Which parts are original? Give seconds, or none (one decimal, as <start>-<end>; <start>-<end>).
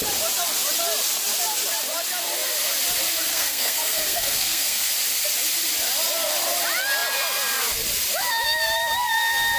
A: 0.0-3.3; 4.9-9.6